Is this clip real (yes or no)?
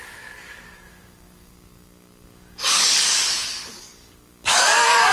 no